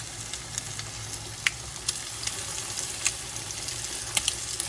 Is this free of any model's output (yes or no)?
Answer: yes